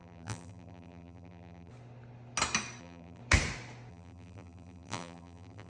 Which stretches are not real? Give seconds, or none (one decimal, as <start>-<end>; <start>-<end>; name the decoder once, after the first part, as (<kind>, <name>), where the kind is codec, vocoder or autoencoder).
0.0-1.7 (vocoder, BigVGAN v2); 2.8-3.2; 3.9-5.7